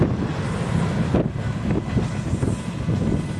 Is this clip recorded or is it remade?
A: recorded